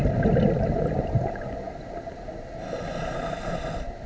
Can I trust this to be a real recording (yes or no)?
yes